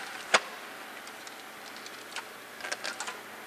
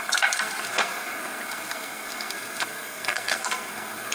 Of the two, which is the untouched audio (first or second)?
first